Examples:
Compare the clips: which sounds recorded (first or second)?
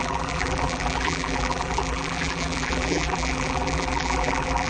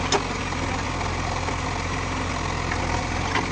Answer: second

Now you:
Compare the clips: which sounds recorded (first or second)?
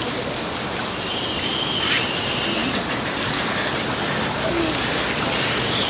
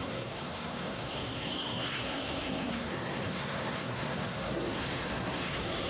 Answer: first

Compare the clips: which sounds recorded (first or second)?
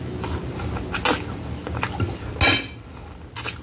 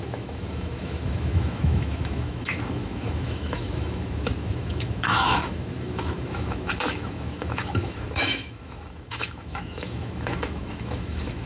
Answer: first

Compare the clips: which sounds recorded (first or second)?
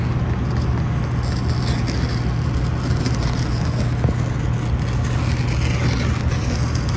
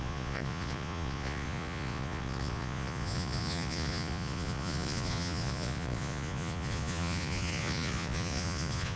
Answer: first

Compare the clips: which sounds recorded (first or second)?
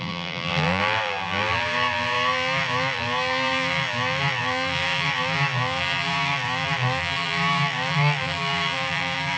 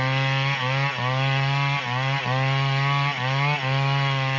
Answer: second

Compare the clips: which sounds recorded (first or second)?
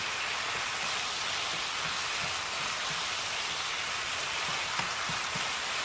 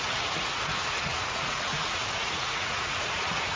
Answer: first